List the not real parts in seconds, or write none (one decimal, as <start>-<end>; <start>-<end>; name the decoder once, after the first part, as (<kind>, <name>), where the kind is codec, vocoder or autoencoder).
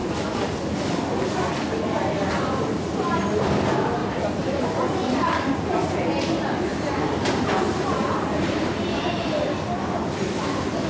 4.0-5.9 (vocoder, BigVGAN v2); 6.7-8.9